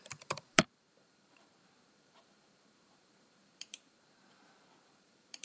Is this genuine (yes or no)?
no